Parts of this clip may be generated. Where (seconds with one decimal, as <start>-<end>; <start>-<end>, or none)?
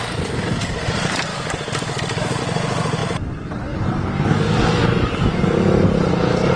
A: 1.3-2.4